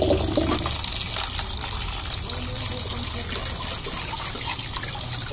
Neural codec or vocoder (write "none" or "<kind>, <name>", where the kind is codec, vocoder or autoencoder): none